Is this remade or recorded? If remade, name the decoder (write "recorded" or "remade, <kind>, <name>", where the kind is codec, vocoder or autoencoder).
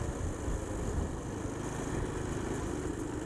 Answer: recorded